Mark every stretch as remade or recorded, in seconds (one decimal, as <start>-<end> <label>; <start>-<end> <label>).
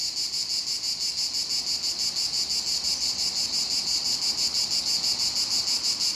0.0-6.2 recorded